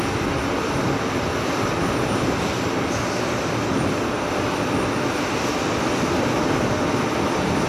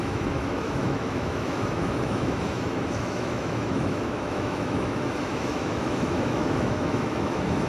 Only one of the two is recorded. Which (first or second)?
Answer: first